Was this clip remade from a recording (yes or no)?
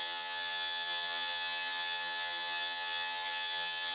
yes